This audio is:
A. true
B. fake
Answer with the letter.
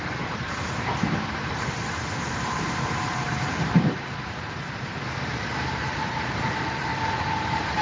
B